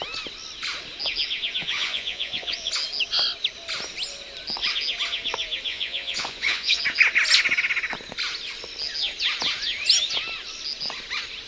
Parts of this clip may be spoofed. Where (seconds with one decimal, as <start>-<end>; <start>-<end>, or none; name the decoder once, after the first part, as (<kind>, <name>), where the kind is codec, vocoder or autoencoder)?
1.6-2.7 (vocoder, Vocos); 5.7-6.8